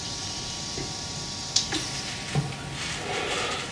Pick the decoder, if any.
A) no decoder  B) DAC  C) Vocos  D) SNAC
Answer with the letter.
A